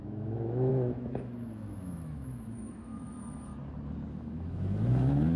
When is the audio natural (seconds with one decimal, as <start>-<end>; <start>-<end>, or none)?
3.5-4.1